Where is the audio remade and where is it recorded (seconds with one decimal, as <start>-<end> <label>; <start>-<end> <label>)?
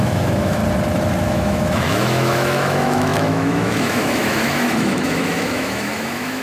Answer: 0.0-0.6 remade; 0.6-1.2 recorded; 1.2-6.4 remade